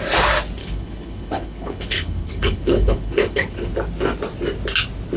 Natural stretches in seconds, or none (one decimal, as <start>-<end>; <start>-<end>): 0.0-0.6; 3.7-5.2